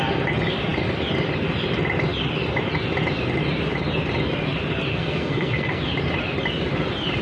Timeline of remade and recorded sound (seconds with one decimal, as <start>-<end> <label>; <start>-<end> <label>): 0.0-4.9 recorded; 4.9-5.8 remade; 5.8-7.2 recorded